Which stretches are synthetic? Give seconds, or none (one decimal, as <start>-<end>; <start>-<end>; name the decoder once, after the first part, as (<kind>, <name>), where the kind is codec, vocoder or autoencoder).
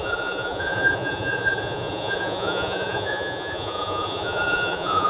0.0-5.1 (vocoder, Vocos)